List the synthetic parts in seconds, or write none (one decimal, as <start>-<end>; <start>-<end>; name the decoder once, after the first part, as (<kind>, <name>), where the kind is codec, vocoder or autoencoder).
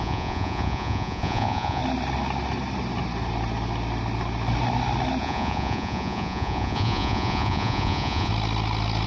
0.0-1.8 (vocoder, Vocos); 5.2-8.3